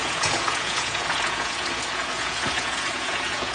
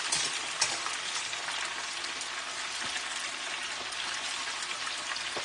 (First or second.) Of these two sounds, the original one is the second